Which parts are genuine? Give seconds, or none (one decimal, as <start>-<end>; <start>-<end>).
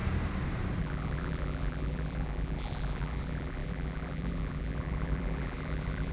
0.0-0.8